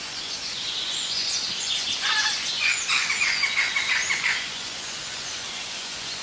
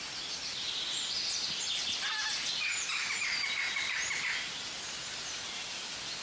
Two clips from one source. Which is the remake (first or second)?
first